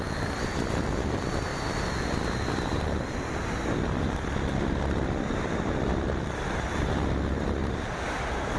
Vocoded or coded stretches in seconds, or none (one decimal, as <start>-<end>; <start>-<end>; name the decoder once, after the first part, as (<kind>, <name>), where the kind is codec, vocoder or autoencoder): 7.6-8.2 (vocoder, BigVGAN v2)